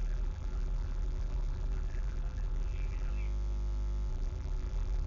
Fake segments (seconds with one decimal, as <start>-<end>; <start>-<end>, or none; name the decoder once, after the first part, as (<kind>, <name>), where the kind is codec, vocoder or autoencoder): 0.0-3.1 (vocoder, BigVGAN v2); 4.1-5.1